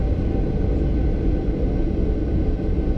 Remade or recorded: recorded